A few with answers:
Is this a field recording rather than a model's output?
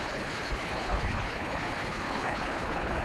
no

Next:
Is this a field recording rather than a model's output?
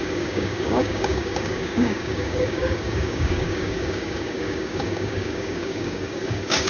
no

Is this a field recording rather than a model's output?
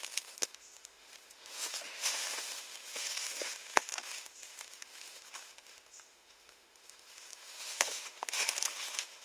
no